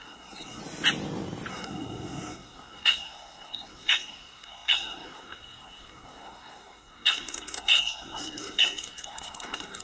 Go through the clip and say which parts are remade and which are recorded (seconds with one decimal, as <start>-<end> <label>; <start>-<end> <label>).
0.0-0.6 remade; 0.6-1.5 recorded; 1.5-9.8 remade